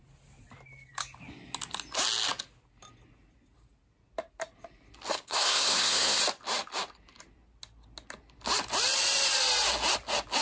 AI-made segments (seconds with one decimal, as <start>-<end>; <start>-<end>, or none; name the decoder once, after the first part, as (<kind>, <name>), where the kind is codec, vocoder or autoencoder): 5.1-6.2 (codec, SNAC)